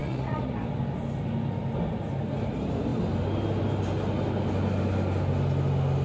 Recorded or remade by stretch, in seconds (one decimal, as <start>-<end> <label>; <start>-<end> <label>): 0.0-0.6 remade; 0.6-6.0 recorded